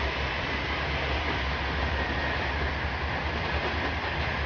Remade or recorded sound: remade